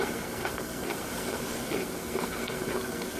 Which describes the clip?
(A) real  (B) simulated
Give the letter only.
B